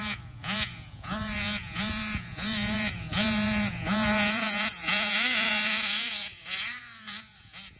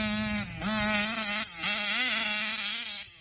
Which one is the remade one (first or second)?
first